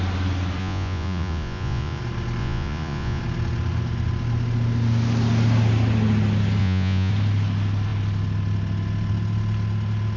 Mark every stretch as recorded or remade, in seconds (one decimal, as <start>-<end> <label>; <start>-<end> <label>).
0.0-0.6 recorded; 0.6-2.0 remade; 2.0-2.4 recorded; 2.4-3.2 remade; 3.2-6.6 recorded; 6.6-7.1 remade; 7.1-10.2 recorded